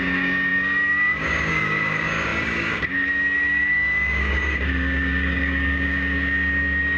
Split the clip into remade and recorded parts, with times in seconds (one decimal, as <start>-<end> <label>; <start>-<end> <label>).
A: 0.0-7.0 remade